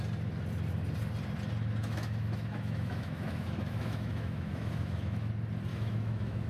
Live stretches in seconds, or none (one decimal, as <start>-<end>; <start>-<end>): 0.0-1.8; 5.3-5.7